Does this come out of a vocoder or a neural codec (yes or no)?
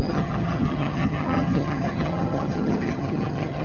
yes